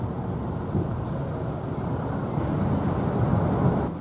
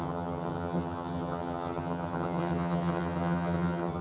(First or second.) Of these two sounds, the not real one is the second